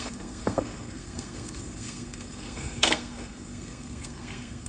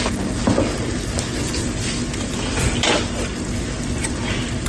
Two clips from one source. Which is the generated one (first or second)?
first